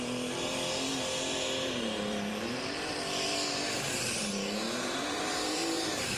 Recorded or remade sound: remade